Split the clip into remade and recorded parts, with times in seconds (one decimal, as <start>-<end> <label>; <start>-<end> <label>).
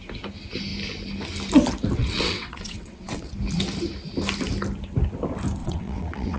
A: 0.0-2.0 recorded; 2.0-3.3 remade; 3.3-5.6 recorded; 5.6-6.4 remade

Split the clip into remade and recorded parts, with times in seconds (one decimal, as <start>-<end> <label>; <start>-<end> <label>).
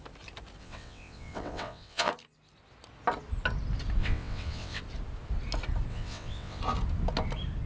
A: 0.0-0.6 recorded; 0.6-2.1 remade; 2.1-4.0 recorded; 4.0-4.8 remade; 4.8-5.9 recorded; 5.9-6.6 remade; 6.6-7.7 recorded